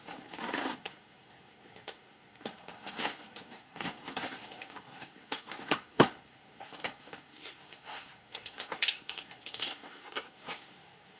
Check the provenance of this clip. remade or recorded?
remade